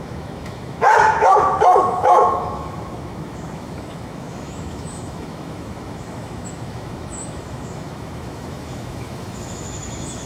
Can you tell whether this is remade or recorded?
remade